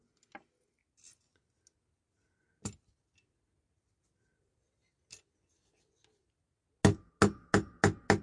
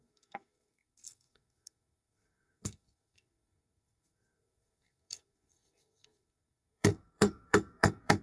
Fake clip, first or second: second